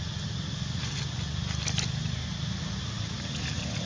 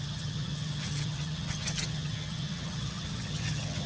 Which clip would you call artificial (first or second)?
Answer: second